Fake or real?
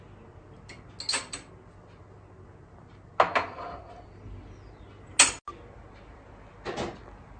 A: real